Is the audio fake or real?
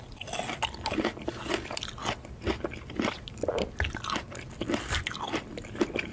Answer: real